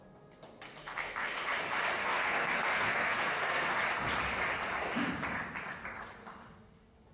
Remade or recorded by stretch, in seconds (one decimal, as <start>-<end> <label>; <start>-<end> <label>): 0.0-0.8 recorded; 0.8-1.5 remade; 1.5-2.0 recorded; 2.0-3.8 remade; 3.8-7.1 recorded